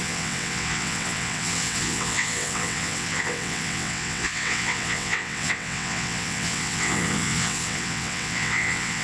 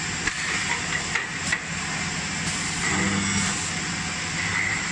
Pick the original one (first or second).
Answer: second